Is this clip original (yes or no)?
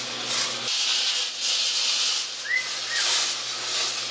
yes